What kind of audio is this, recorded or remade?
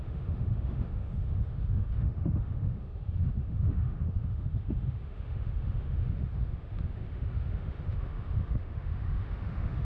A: remade